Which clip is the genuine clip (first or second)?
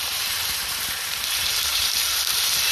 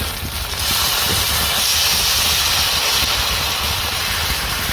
second